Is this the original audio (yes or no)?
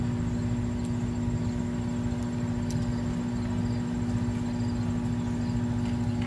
yes